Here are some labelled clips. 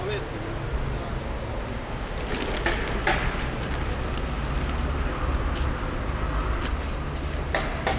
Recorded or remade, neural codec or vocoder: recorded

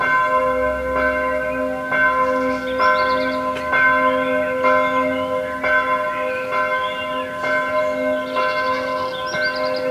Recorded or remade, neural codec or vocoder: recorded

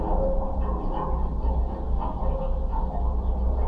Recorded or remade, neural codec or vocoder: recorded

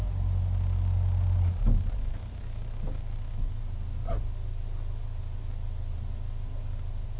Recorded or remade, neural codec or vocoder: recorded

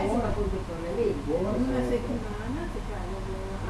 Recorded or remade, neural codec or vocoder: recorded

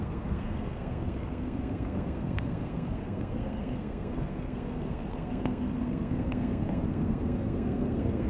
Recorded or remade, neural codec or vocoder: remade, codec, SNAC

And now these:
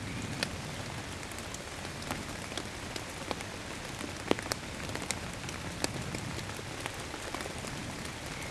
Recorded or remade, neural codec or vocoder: recorded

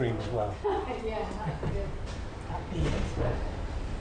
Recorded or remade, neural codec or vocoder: recorded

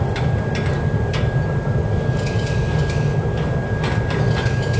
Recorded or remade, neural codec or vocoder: recorded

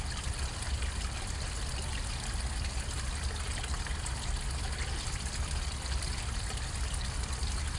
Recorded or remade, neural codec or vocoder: recorded